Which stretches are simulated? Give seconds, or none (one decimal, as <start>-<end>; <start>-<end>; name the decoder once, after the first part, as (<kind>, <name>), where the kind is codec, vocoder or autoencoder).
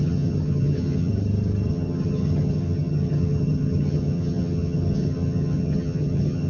0.0-1.1 (vocoder, HiFi-GAN); 1.7-6.5